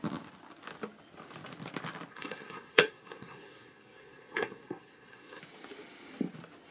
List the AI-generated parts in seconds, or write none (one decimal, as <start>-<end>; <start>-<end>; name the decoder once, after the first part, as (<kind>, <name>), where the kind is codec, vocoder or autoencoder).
2.1-5.4 (codec, SNAC)